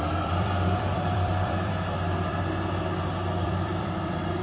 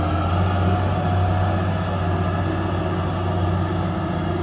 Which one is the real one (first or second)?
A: second